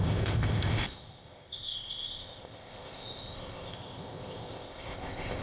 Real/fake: fake